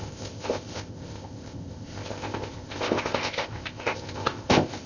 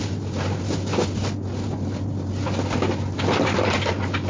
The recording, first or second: second